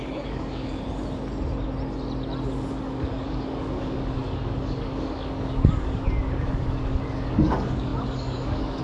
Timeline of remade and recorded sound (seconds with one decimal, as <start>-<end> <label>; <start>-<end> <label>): 0.0-0.7 remade; 0.7-2.7 recorded; 2.7-8.8 remade

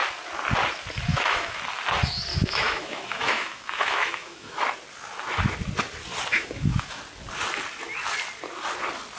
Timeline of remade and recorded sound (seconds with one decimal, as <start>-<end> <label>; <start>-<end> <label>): 0.0-1.1 recorded; 1.1-1.6 remade; 1.6-2.3 recorded; 2.3-4.6 remade; 4.6-6.3 recorded; 6.3-7.0 remade; 7.0-9.2 recorded

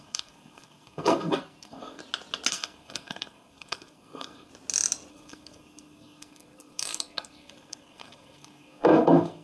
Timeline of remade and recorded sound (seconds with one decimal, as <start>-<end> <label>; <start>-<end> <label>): 0.0-2.0 remade; 2.0-2.5 recorded; 2.5-4.5 remade; 4.5-5.1 recorded; 5.1-9.4 remade